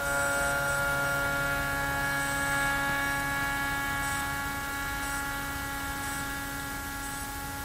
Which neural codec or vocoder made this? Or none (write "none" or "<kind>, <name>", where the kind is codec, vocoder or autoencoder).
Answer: none